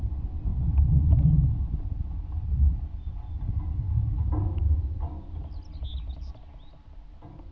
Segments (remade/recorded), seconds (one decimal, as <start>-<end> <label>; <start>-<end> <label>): 0.0-7.5 recorded